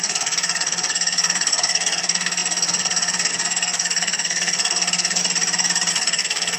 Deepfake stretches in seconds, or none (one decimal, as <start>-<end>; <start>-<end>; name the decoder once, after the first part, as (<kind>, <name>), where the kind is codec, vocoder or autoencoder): 0.0-5.2 (codec, SNAC); 5.9-6.6